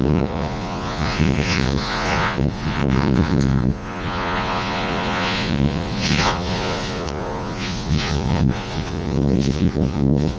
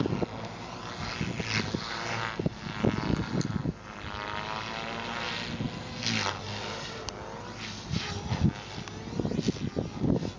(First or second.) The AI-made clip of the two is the first